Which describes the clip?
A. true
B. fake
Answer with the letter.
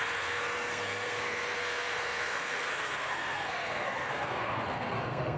B